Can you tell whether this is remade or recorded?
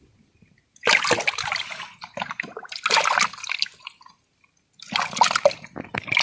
recorded